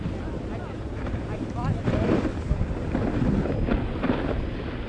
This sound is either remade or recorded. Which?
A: recorded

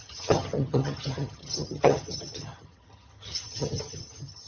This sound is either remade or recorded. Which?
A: remade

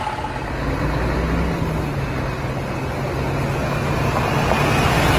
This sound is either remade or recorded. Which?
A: recorded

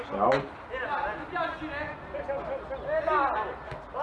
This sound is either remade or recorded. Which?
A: recorded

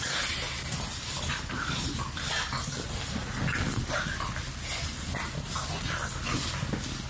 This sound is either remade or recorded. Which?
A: recorded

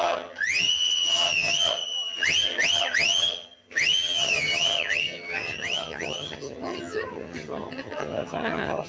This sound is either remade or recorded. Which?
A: remade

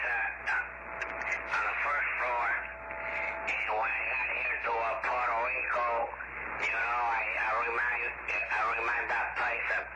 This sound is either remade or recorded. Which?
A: recorded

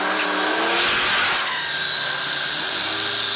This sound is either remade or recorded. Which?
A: recorded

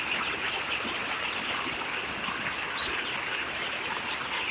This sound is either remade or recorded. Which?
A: recorded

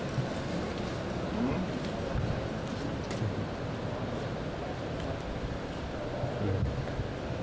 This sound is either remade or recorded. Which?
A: recorded